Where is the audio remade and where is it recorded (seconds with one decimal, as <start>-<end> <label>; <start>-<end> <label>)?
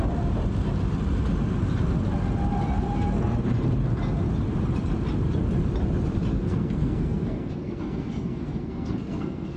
0.0-6.3 recorded; 6.3-9.6 remade